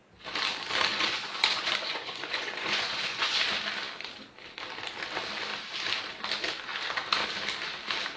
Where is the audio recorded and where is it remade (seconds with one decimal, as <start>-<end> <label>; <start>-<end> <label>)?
0.0-0.9 recorded; 0.9-3.4 remade; 3.4-8.2 recorded

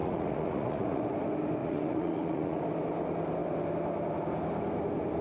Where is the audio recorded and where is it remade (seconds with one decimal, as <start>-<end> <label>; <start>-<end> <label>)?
0.0-1.0 remade; 1.0-1.6 recorded; 1.6-2.6 remade; 2.6-5.2 recorded

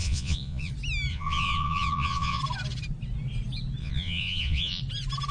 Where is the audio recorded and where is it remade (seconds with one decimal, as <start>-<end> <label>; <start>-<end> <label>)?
0.0-0.7 remade; 0.7-1.1 recorded; 1.1-2.4 remade; 2.4-3.8 recorded; 3.8-4.8 remade; 4.8-5.3 recorded

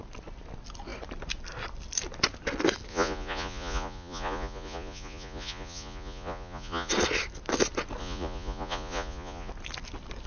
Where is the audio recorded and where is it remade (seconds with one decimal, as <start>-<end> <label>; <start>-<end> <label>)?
0.0-2.9 recorded; 2.9-6.9 remade; 6.9-8.0 recorded; 8.0-9.5 remade; 9.5-10.3 recorded

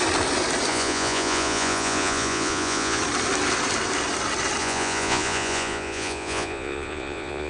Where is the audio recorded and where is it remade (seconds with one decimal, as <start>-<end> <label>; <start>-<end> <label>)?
0.0-0.7 recorded; 0.7-3.0 remade; 3.0-4.6 recorded; 4.6-7.5 remade

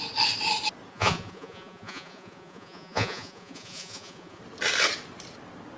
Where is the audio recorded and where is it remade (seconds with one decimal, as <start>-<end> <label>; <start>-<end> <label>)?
0.0-0.9 recorded; 0.9-4.4 remade; 4.4-5.8 recorded

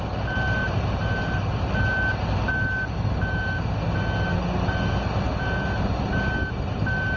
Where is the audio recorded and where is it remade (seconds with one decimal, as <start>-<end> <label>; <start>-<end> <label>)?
0.0-7.2 recorded

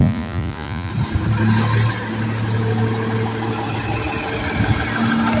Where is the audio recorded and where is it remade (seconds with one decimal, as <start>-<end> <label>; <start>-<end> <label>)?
0.0-0.9 remade; 0.9-5.4 recorded